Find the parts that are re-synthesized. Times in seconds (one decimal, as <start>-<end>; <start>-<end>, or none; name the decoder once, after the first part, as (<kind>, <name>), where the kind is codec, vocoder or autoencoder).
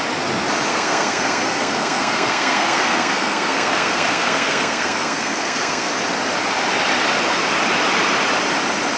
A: 0.7-5.9 (codec, SNAC)